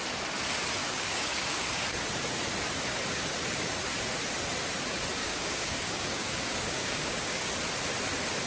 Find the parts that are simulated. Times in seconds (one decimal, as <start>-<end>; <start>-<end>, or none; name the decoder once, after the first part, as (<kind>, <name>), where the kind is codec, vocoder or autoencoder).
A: 0.8-1.8 (codec, DAC); 5.2-7.5